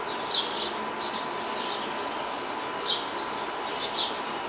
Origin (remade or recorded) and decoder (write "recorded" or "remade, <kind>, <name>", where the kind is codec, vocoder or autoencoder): recorded